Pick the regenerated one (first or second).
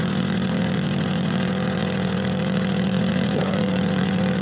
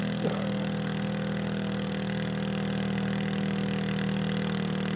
first